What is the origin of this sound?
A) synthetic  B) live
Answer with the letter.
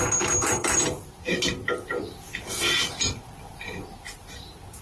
B